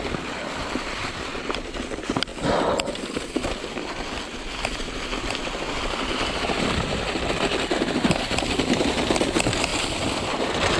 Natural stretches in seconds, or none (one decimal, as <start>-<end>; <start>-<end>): 0.0-10.8